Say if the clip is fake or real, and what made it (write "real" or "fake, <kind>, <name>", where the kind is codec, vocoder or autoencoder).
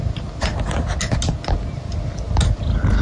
real